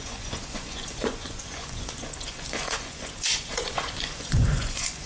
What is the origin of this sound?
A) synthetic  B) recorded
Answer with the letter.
A